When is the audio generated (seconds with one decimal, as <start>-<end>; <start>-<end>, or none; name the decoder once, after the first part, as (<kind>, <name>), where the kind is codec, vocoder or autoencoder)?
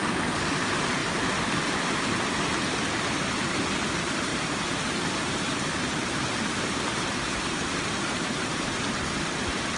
4.3-9.0 (vocoder, BigVGAN v2)